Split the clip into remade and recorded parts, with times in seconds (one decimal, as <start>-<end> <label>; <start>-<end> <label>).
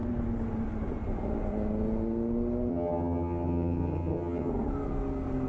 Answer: 0.0-2.7 recorded; 2.7-4.5 remade; 4.5-5.5 recorded